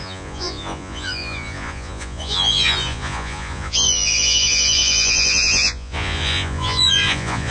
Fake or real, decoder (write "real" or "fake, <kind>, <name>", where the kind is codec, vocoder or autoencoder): fake, vocoder, Vocos